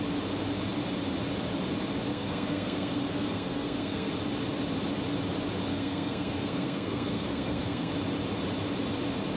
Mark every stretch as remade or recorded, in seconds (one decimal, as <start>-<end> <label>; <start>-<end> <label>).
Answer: 0.0-2.1 recorded; 2.1-4.1 remade; 4.1-5.7 recorded; 5.7-7.9 remade; 7.9-9.4 recorded